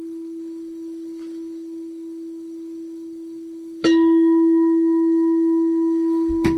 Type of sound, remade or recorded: remade